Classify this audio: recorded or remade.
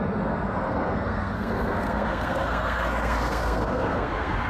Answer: remade